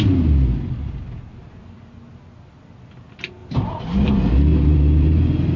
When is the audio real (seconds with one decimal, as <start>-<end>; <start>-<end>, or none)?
0.0-3.4; 4.1-4.5